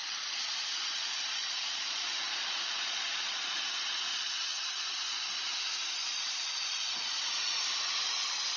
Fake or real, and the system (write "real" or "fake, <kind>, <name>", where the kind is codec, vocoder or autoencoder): fake, vocoder, Vocos